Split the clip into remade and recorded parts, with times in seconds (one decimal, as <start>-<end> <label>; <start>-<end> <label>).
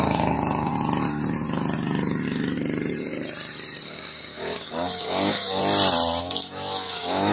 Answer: 0.0-0.7 remade; 0.7-3.8 recorded; 3.8-5.6 remade; 5.6-6.2 recorded; 6.2-7.3 remade